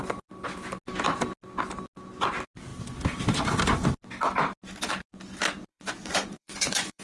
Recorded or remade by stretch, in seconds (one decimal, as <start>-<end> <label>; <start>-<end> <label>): 0.0-5.7 recorded; 5.7-7.0 remade

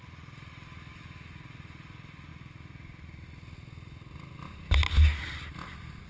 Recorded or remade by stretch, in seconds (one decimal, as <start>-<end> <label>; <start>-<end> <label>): 0.0-6.1 recorded

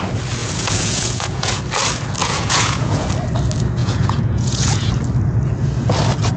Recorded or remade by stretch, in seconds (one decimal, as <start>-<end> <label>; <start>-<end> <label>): 0.0-0.4 recorded; 0.4-1.6 remade; 1.6-2.2 recorded; 2.2-3.1 remade; 3.1-3.8 recorded; 3.8-4.9 remade; 4.9-6.4 recorded

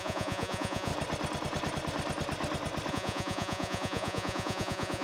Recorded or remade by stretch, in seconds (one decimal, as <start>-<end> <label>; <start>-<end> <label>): 0.0-0.9 remade; 0.9-2.9 recorded; 2.9-5.0 remade

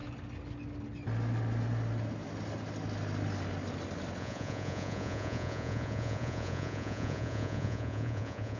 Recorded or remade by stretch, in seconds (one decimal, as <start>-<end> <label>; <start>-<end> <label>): 0.0-4.2 recorded; 4.2-8.6 remade